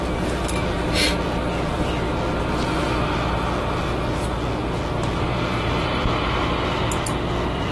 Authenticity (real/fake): real